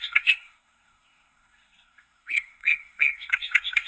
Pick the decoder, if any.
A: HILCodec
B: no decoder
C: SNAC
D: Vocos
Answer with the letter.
C